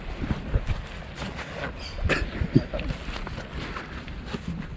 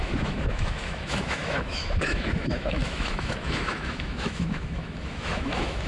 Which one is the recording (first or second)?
first